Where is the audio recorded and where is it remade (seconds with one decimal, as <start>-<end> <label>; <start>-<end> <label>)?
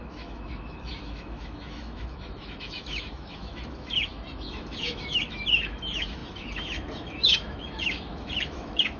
0.0-9.0 remade